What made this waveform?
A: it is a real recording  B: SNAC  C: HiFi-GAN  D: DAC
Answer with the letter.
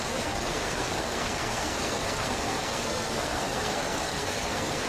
B